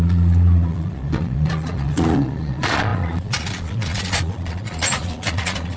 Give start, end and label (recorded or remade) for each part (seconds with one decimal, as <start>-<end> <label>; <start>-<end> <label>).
0.0-5.8 remade

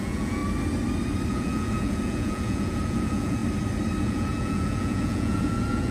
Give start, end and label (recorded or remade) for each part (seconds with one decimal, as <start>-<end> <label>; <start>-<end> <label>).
0.0-0.4 remade; 0.4-1.3 recorded; 1.3-3.4 remade; 3.4-4.0 recorded; 4.0-5.9 remade

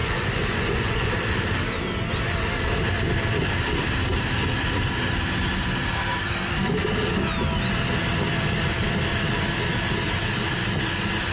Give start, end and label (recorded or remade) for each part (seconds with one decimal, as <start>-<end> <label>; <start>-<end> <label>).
0.0-1.1 remade; 1.1-11.3 recorded

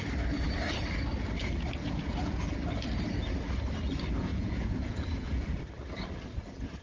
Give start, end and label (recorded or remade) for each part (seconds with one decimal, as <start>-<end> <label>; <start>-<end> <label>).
0.0-1.8 recorded; 1.8-2.4 remade; 2.4-4.3 recorded; 4.3-5.6 remade; 5.6-6.8 recorded